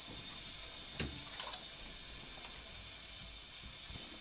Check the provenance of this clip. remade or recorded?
recorded